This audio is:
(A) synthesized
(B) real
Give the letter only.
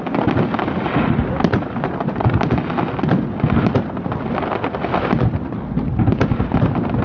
B